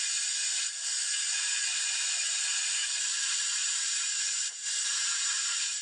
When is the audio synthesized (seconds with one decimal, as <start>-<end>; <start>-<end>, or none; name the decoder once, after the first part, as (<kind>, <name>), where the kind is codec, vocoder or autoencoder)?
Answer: 3.6-5.8 (vocoder, BigVGAN v2)